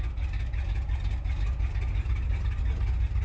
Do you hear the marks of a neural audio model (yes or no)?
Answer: no